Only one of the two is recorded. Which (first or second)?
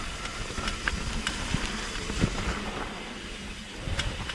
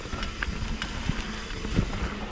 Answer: second